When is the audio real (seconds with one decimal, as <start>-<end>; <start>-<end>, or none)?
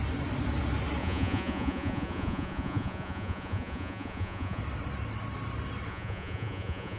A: 0.0-1.0; 4.6-5.9